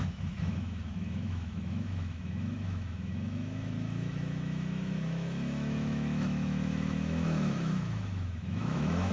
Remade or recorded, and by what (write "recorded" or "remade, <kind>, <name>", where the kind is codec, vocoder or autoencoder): remade, autoencoder, DAC-VAE